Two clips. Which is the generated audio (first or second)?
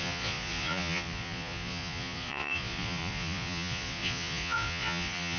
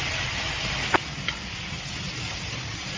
first